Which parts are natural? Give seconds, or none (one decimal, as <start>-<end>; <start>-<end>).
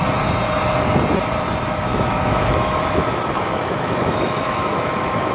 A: 0.0-1.9